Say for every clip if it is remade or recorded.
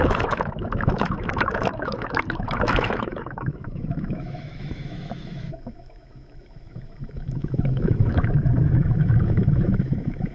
remade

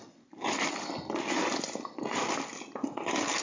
recorded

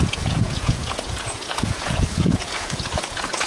remade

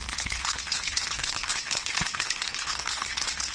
remade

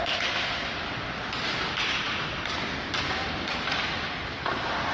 recorded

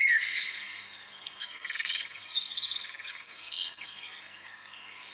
remade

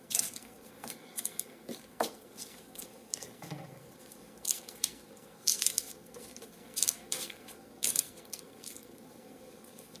remade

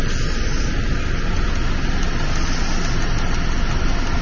recorded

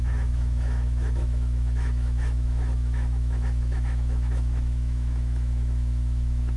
remade